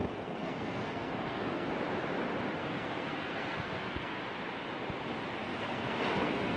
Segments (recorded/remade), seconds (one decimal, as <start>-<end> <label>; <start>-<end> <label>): 0.0-1.7 remade; 1.7-2.6 recorded; 2.6-4.2 remade; 4.2-5.4 recorded; 5.4-6.6 remade